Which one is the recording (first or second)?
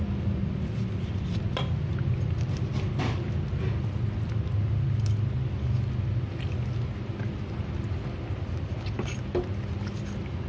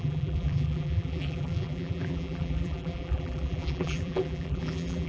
first